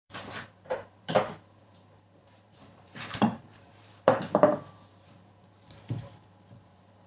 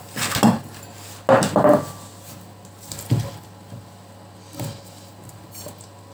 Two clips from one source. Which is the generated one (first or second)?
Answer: first